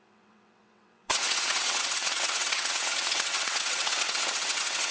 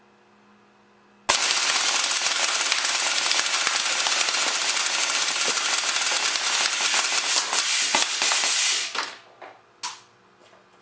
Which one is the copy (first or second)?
first